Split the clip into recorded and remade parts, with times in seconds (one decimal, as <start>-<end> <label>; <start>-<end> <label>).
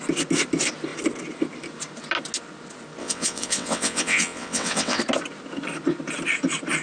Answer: 0.0-3.0 recorded; 3.0-5.0 remade; 5.0-6.8 recorded